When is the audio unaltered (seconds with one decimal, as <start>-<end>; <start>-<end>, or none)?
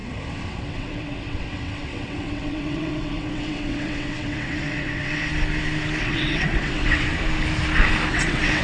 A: 5.3-6.0; 7.1-8.1